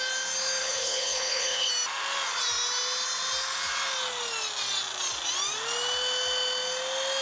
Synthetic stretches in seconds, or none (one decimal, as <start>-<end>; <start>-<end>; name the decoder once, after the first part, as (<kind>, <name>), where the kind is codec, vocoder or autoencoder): 0.6-1.7 (codec, HILCodec)